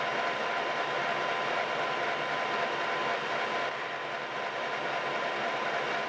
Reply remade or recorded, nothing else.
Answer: recorded